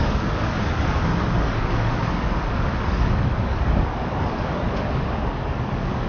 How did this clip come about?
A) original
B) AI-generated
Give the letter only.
B